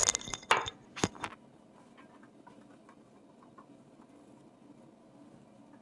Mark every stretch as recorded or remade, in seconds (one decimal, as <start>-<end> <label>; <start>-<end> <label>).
0.0-5.8 recorded